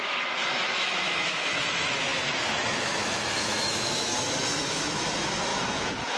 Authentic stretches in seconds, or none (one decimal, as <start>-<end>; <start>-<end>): none